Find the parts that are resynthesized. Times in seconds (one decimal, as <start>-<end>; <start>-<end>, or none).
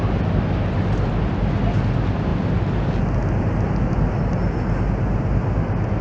none